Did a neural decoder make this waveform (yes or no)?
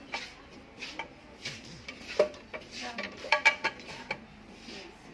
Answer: no